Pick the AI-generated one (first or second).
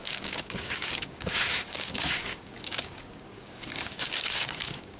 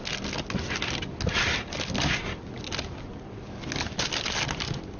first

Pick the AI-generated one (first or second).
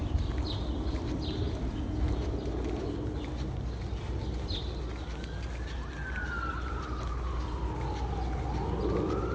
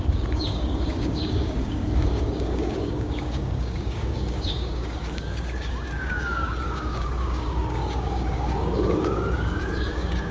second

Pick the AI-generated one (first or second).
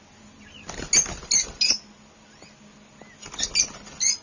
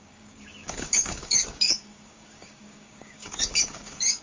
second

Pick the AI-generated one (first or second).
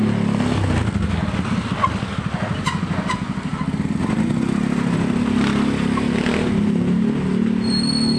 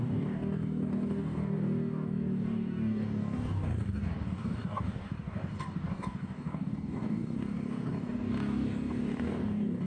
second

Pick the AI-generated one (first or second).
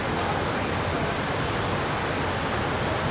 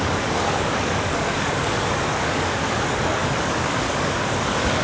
second